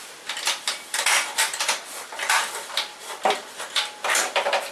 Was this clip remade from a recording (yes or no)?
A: no